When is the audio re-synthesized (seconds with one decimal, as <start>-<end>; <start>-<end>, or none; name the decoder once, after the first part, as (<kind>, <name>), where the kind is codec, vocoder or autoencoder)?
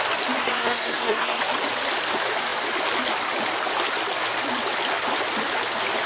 0.4-1.4 (codec, SNAC)